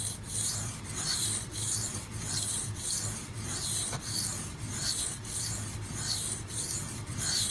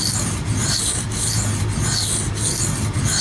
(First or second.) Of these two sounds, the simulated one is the first